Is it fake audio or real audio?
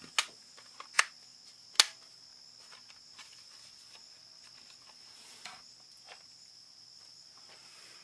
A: real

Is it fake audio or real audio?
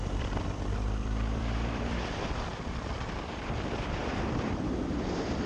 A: fake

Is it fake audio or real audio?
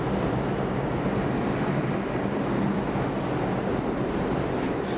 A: real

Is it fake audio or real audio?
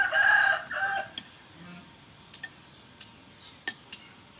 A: real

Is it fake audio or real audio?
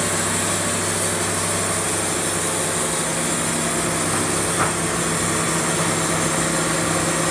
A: real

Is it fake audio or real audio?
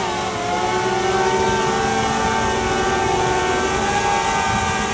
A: real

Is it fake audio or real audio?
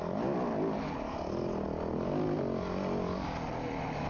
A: real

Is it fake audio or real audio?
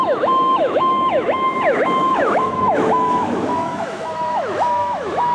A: fake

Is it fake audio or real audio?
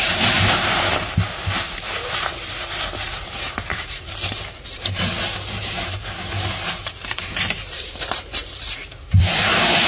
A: fake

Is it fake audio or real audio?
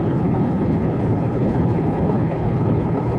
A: fake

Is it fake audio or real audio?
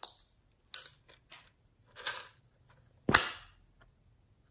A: real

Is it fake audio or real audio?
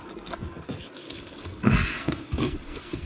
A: fake